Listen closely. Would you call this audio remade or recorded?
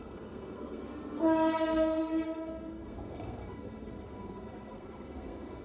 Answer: remade